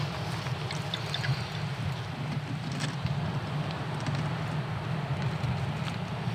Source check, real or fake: real